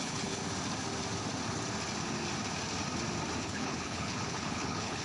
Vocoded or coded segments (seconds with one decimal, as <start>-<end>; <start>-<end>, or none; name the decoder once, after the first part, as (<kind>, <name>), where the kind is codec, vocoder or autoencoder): 0.0-0.4 (codec, HILCodec); 3.4-5.0

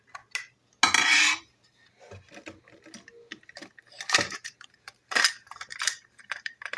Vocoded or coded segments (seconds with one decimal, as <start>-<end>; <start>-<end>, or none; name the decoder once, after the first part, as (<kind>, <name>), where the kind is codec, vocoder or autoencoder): 3.6-6.8 (vocoder, BigVGAN v2)

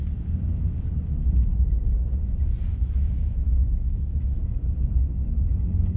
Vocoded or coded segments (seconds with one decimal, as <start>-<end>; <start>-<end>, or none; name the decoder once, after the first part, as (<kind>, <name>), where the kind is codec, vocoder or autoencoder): 2.7-4.6 (autoencoder, DAC-VAE); 5.0-6.0

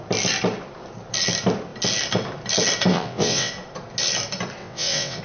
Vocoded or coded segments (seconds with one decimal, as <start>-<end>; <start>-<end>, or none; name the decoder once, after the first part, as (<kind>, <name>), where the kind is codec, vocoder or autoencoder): 2.9-3.5 (vocoder, WaveNeXt); 4.6-5.2

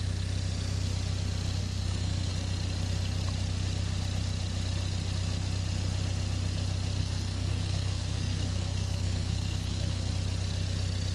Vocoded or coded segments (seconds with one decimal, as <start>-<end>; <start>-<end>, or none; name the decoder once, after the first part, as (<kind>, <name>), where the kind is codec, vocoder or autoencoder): 1.6-2.3 (codec, SNAC); 7.0-10.1